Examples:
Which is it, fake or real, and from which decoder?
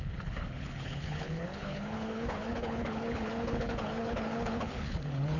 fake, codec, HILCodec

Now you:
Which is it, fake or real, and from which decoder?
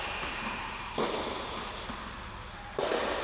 real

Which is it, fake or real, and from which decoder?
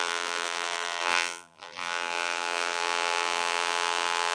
fake, vocoder, BigVGAN v2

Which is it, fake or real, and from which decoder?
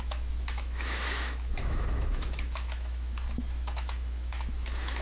fake, autoencoder, DAC-VAE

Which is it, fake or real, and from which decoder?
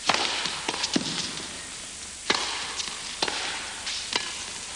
real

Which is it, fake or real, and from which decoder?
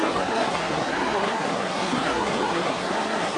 fake, codec, SNAC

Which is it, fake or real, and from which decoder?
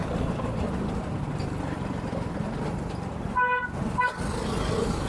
real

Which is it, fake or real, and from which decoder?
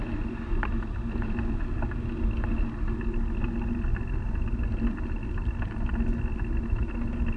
real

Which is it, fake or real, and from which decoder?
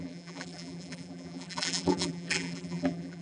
fake, vocoder, BigVGAN v2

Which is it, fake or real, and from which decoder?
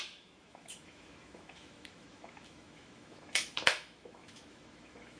fake, autoencoder, DAC-VAE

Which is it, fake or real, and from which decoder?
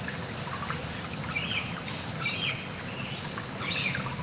real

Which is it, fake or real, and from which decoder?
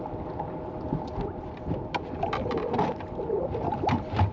real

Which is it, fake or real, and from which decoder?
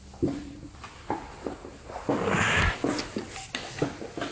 real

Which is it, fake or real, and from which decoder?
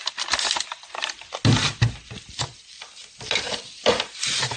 real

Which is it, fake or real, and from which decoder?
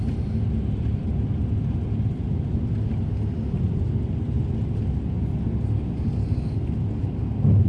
real